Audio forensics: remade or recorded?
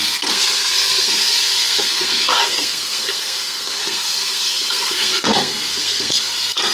remade